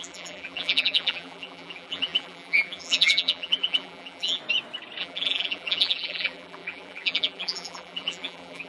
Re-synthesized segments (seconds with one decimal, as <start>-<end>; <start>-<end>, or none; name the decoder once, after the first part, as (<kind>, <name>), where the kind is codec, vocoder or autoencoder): 0.0-4.4 (vocoder, BigVGAN v2); 5.0-8.7